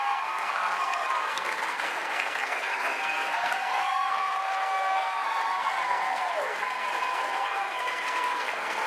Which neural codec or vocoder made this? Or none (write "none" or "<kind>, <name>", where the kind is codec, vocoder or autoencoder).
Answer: codec, SNAC